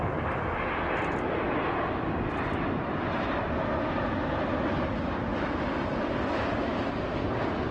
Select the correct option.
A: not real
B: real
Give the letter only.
B